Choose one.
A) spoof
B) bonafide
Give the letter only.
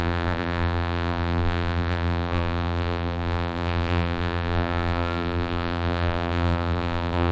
A